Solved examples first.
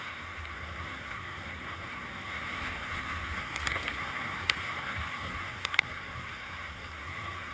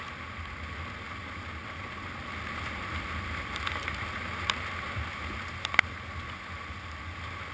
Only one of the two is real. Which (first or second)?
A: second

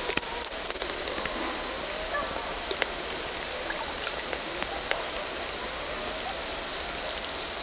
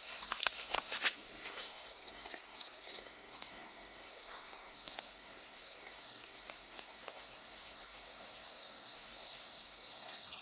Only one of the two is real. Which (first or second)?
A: first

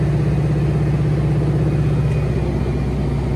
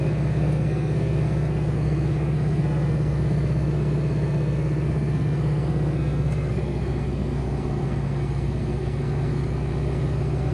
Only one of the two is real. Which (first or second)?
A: first